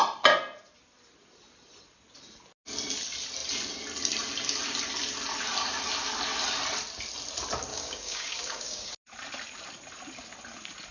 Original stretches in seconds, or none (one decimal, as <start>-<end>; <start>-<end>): 0.0-7.7; 8.9-10.9